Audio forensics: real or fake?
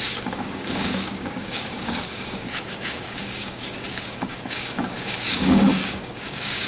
fake